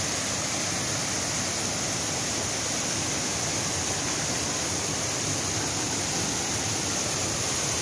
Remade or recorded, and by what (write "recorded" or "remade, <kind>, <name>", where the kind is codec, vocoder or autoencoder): recorded